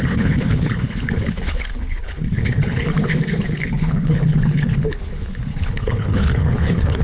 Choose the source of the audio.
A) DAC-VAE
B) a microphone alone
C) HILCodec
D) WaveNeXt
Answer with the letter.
C